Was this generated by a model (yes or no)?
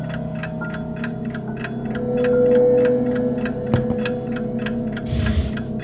no